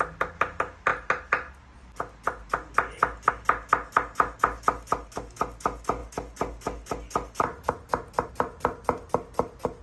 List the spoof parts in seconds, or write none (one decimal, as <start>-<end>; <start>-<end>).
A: none